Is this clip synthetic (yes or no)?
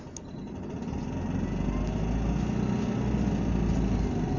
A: no